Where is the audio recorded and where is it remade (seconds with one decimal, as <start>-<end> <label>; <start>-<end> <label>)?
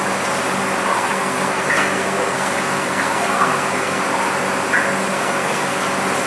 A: 0.0-0.9 recorded; 0.9-4.0 remade; 4.0-5.1 recorded; 5.1-5.8 remade; 5.8-6.3 recorded